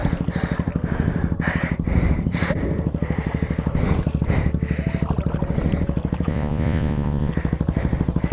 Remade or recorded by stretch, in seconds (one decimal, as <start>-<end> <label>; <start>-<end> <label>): 0.0-6.3 recorded; 6.3-7.3 remade; 7.3-8.3 recorded